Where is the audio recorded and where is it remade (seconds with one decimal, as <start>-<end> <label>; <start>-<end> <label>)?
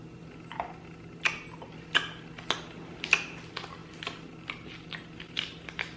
0.0-6.0 recorded